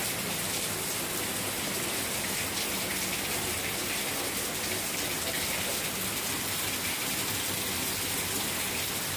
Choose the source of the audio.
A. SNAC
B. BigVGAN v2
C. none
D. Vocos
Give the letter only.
C